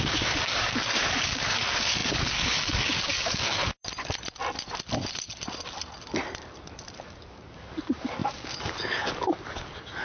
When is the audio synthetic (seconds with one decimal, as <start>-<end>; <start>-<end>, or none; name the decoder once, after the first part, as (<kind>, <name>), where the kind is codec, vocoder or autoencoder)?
0.0-3.6 (codec, DAC); 7.0-10.0